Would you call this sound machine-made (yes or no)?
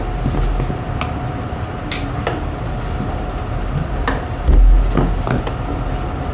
no